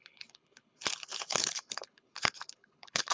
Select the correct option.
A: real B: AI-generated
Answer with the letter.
B